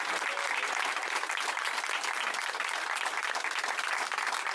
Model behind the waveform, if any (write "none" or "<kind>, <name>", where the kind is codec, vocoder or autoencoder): none